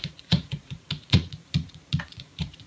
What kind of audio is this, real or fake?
fake